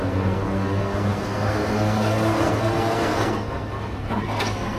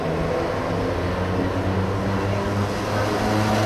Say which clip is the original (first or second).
second